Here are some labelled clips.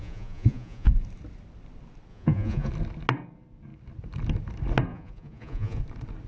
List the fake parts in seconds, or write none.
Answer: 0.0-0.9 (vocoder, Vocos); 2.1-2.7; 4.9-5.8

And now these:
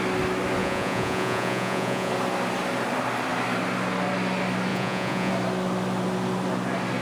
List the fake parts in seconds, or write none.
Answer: 0.6-2.1 (vocoder, Vocos); 4.7-5.3

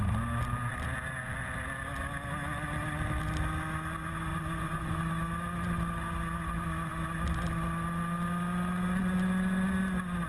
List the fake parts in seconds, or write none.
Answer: 4.3-5.0 (vocoder, Vocos)

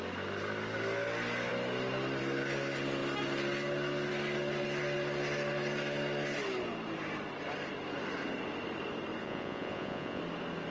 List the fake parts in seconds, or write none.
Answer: 9.2-10.2 (vocoder, Vocos)

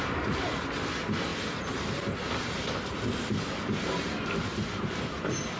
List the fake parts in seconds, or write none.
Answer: none

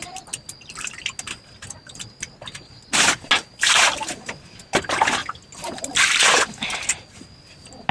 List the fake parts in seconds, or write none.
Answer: none